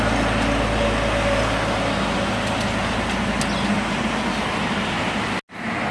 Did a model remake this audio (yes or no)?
no